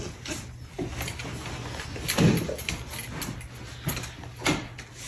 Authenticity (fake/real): real